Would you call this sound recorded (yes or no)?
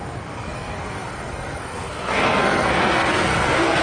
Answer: no